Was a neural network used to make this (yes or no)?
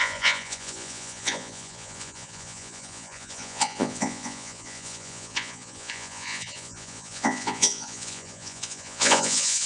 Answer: yes